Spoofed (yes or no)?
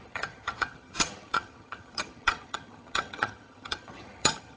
yes